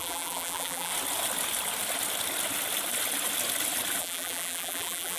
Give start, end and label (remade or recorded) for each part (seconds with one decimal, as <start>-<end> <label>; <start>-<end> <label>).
0.0-0.9 remade; 0.9-4.0 recorded; 4.0-5.2 remade